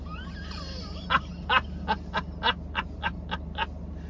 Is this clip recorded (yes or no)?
yes